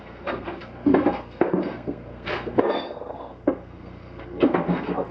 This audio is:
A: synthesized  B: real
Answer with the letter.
A